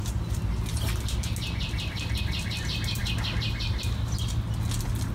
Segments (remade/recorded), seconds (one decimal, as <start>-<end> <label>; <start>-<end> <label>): 0.0-5.1 recorded